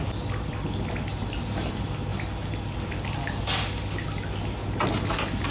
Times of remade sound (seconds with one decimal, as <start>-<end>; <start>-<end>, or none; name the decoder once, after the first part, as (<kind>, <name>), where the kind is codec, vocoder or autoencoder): none